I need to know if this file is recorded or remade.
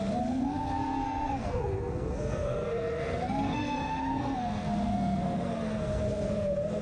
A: remade